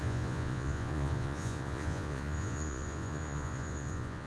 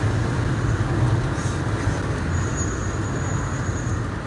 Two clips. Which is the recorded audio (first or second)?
second